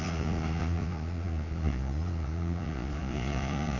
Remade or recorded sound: remade